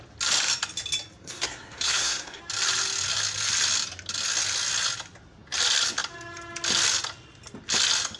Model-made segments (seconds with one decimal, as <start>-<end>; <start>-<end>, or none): 1.2-2.4

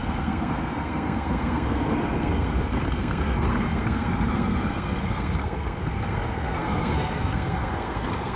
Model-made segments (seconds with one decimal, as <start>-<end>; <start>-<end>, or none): 0.0-8.4

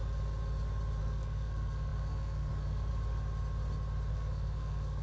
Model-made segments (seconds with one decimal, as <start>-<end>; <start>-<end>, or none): 1.0-2.9; 4.1-5.0

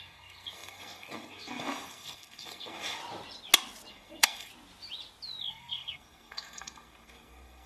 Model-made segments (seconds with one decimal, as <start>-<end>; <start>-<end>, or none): 0.0-3.0; 3.9-4.5; 5.4-7.7

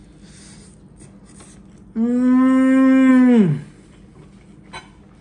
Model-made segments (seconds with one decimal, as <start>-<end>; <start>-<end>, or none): none

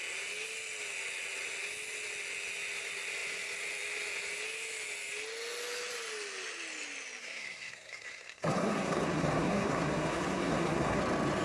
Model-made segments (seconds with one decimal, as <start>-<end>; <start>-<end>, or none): 7.2-11.0

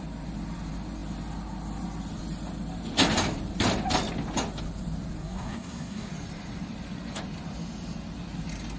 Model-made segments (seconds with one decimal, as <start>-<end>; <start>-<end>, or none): 5.2-6.1